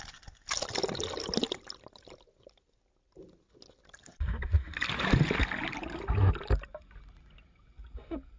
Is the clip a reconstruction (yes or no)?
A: no